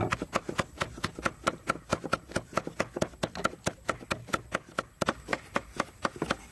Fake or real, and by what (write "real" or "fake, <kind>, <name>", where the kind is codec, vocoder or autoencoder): real